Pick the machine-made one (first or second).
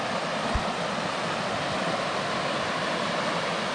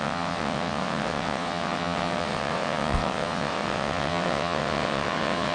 second